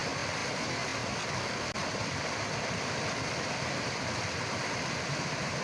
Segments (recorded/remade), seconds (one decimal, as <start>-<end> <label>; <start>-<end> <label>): 0.0-0.8 remade; 0.8-1.8 recorded; 1.8-5.6 remade